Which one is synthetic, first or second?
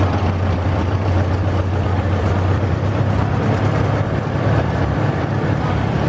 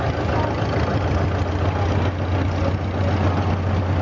first